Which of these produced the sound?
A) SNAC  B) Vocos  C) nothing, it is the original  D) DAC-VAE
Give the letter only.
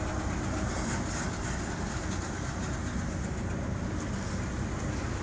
C